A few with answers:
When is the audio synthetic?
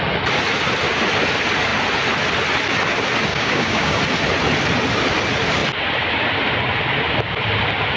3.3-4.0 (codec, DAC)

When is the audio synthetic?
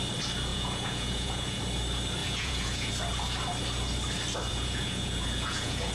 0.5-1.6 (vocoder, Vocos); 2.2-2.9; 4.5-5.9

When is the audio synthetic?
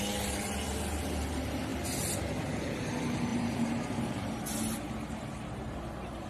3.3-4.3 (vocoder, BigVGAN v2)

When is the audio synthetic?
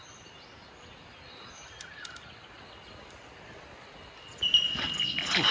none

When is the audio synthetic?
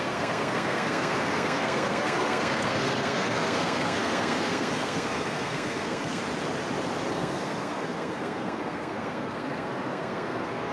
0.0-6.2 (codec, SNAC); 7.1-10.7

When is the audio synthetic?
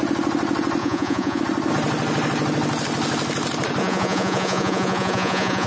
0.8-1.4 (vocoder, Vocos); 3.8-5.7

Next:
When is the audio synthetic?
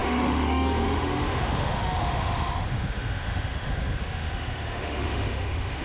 0.0-5.8 (autoencoder, DAC-VAE)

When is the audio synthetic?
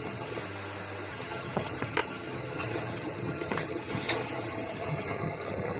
0.0-0.4 (vocoder, HiFi-GAN); 1.1-5.8